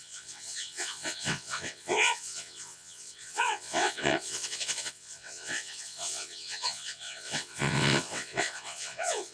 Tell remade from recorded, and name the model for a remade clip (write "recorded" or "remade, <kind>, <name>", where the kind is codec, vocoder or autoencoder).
remade, vocoder, WaveNeXt